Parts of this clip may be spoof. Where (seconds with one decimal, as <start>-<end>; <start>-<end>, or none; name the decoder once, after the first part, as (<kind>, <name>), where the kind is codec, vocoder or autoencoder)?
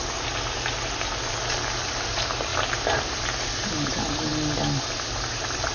none